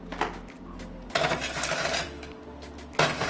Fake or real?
real